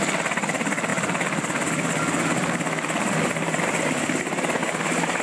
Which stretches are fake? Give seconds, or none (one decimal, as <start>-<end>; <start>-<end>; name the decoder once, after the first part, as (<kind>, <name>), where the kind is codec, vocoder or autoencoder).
4.6-5.2 (vocoder, BigVGAN v2)